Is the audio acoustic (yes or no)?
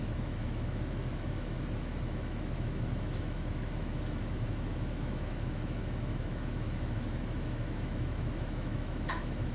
no